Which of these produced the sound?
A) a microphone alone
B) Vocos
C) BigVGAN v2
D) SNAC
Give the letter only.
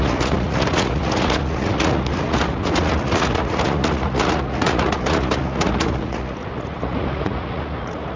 B